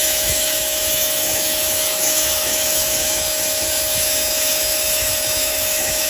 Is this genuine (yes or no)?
no